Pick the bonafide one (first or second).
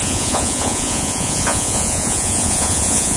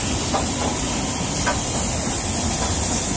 second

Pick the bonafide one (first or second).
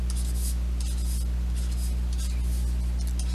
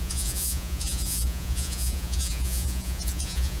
first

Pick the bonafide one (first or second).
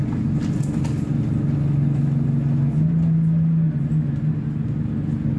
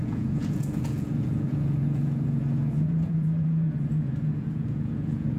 first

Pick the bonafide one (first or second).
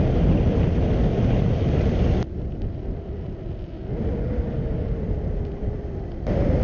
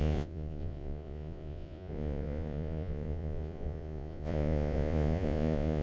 first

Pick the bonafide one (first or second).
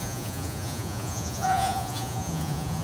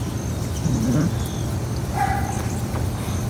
second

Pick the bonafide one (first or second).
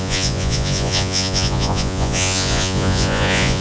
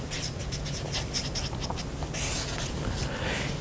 second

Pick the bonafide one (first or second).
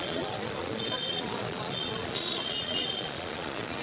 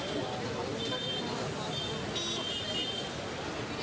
second